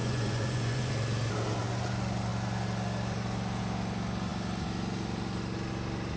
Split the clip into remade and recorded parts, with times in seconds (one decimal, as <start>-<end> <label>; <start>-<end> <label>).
0.0-0.9 remade; 0.9-6.2 recorded